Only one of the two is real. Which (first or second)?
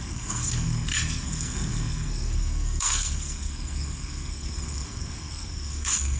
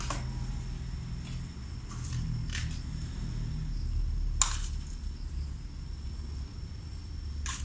second